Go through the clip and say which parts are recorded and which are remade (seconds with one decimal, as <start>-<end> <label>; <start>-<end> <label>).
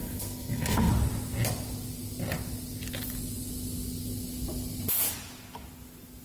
0.0-0.9 remade; 0.9-6.2 recorded